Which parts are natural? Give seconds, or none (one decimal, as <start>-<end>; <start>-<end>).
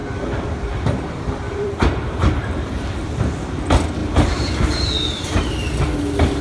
3.3-4.0; 4.9-6.4